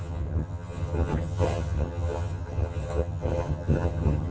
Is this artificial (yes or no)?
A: yes